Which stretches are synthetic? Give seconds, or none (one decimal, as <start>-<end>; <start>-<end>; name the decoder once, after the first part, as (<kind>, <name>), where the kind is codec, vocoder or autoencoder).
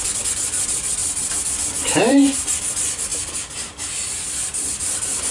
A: 0.0-1.0 (vocoder, BigVGAN v2); 1.8-3.1; 4.4-5.3